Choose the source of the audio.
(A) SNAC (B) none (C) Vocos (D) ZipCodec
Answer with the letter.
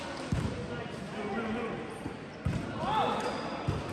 B